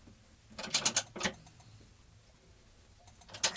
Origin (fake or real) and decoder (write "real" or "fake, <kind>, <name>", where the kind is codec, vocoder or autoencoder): real